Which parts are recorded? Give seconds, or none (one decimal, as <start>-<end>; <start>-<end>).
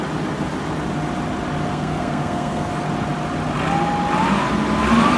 0.0-1.7; 2.7-5.2